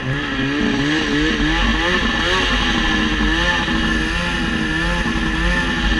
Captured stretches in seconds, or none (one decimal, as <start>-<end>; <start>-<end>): 0.0-6.0